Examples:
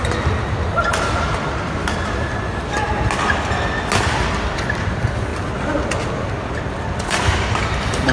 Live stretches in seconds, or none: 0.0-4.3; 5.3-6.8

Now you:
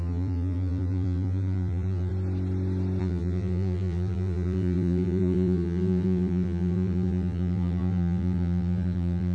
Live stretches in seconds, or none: 2.1-3.0

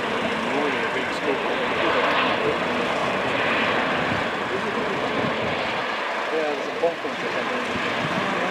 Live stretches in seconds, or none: 0.0-3.0; 4.0-8.5

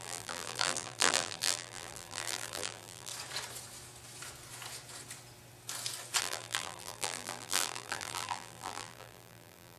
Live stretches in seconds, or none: 3.1-6.2

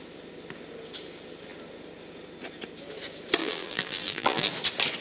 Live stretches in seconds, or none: 0.0-3.4; 4.5-5.0

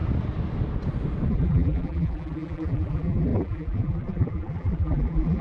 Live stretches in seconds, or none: 0.0-1.3

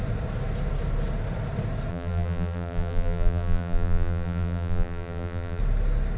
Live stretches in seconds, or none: 0.0-1.9; 5.6-6.2